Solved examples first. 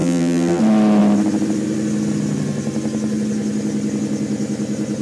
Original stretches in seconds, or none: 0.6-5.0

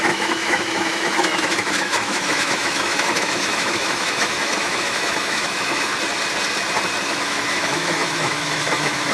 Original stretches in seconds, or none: 5.9-7.0